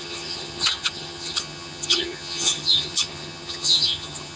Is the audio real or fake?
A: fake